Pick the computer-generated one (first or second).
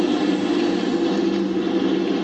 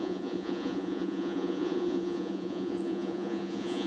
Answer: second